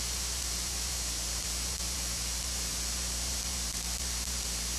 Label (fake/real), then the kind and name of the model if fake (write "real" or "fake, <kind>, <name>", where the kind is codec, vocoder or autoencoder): fake, vocoder, BigVGAN v2